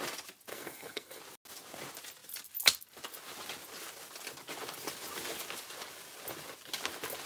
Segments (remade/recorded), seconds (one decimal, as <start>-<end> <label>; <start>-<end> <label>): 0.0-0.5 recorded; 0.5-1.2 remade; 1.2-7.3 recorded